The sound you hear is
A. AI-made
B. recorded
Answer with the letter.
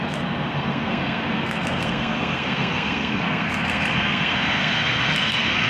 A